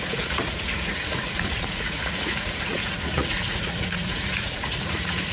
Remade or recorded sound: remade